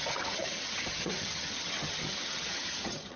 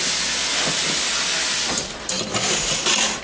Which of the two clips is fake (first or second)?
first